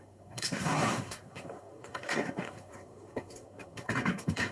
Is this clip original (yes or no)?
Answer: no